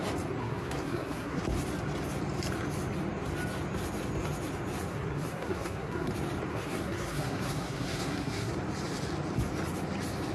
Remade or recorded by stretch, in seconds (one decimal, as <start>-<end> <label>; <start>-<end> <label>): 0.0-0.4 recorded; 0.4-1.4 remade; 1.4-4.9 recorded; 4.9-6.1 remade; 6.1-6.5 recorded; 6.5-8.5 remade; 8.5-10.3 recorded